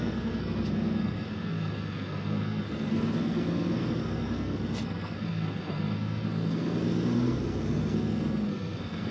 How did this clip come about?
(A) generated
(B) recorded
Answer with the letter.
A